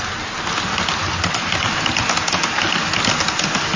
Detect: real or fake real